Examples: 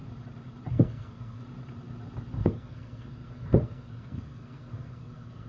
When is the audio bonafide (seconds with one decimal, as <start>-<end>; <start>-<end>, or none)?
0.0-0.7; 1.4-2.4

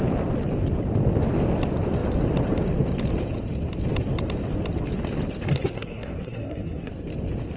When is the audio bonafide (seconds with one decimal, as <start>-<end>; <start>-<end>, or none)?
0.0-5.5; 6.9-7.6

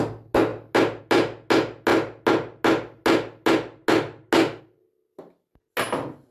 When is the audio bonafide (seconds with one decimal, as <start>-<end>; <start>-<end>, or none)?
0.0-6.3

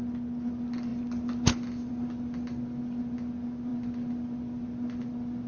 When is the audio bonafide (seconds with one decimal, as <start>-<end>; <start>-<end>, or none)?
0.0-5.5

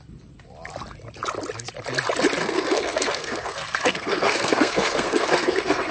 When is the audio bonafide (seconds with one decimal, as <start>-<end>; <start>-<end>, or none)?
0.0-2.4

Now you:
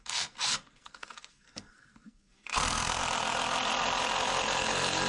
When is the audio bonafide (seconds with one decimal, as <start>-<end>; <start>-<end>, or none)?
3.0-5.1

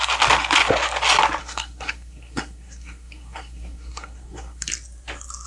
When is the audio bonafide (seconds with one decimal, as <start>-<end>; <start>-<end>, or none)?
0.0-1.4; 4.7-5.5